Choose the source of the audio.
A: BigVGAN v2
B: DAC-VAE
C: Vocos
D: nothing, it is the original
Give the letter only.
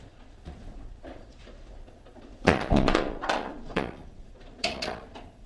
C